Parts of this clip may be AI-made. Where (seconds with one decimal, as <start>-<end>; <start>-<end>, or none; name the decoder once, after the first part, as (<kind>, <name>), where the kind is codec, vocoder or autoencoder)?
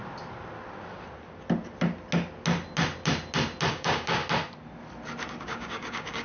3.7-4.2 (codec, DAC); 5.4-6.2